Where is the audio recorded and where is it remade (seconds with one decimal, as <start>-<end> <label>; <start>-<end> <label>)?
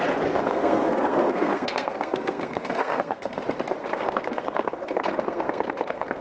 0.0-0.4 recorded; 0.4-3.4 remade; 3.4-3.8 recorded; 3.8-6.2 remade